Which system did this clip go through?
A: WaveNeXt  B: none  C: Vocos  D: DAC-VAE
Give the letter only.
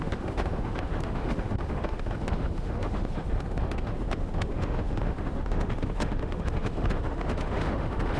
D